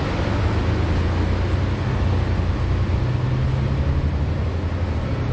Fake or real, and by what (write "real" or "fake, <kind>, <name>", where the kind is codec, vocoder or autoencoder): real